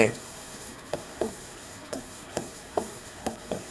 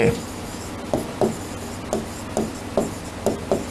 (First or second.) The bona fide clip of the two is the second